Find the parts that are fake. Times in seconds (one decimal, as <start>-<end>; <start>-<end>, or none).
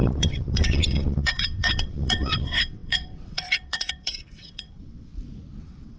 0.0-5.1; 5.6-6.0